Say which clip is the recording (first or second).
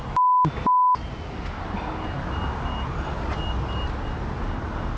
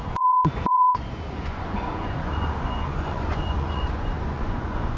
first